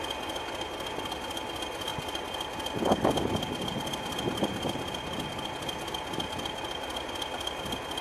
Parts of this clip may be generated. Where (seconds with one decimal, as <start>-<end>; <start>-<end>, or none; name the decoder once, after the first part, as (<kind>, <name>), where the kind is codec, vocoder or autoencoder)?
none